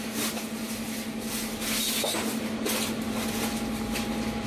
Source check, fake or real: real